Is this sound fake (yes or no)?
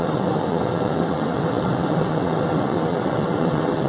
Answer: yes